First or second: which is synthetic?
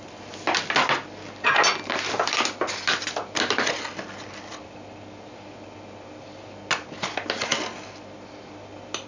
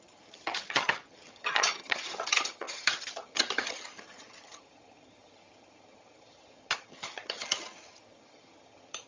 second